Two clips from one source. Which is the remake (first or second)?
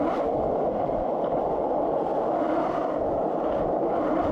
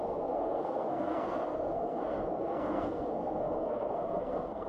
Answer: second